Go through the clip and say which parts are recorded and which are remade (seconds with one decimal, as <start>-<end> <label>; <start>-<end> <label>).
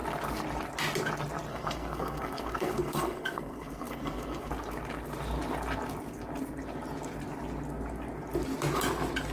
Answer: 0.0-1.5 recorded; 1.5-4.5 remade; 4.5-9.3 recorded